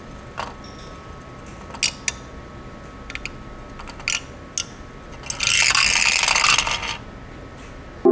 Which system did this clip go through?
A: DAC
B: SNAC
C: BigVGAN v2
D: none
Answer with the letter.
D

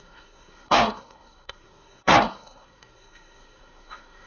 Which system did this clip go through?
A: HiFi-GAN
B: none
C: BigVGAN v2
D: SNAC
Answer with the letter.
D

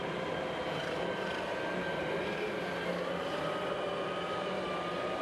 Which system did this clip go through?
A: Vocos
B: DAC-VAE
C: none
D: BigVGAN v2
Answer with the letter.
C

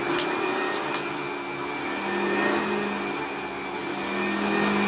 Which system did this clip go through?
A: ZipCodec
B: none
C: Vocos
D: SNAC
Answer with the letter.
B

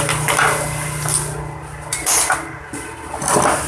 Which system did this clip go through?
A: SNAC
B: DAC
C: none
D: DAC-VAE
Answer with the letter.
C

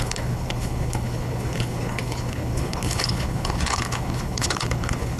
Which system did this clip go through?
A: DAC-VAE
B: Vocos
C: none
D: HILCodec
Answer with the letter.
D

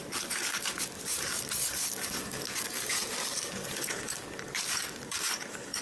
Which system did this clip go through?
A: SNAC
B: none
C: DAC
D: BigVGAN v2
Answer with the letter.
C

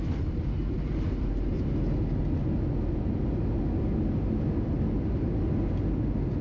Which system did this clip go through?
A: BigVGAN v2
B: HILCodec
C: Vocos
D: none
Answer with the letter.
D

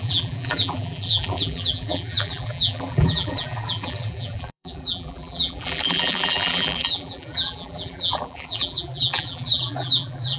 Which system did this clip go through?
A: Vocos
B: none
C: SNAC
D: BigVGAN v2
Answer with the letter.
D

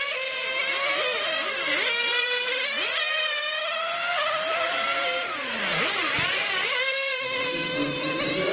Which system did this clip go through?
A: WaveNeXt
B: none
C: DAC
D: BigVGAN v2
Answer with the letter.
D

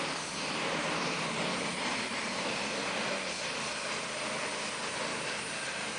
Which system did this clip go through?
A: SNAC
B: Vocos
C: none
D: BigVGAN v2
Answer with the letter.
C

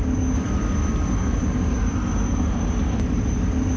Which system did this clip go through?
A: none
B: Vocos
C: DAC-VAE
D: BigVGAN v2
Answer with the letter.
A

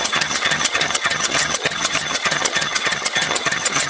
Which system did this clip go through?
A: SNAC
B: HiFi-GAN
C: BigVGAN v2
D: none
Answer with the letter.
B